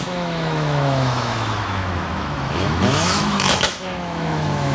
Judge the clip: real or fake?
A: fake